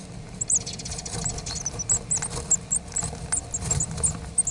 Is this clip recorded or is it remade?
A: recorded